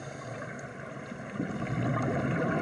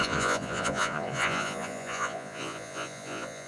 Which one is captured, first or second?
first